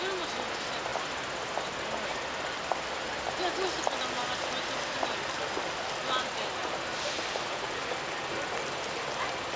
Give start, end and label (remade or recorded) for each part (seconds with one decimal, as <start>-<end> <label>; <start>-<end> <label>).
0.0-9.6 recorded